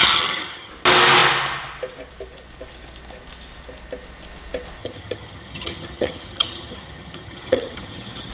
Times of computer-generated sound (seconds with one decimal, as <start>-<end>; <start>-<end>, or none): 0.0-0.7; 4.8-8.3